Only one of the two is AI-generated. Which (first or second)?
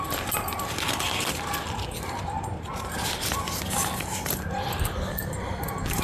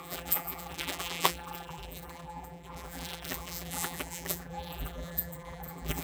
second